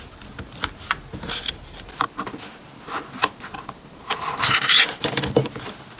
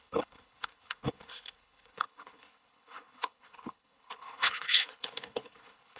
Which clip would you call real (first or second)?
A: first